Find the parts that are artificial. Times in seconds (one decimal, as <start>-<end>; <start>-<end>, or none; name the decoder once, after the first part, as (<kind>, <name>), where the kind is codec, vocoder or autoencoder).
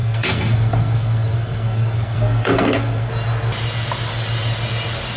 0.0-3.1 (codec, SNAC)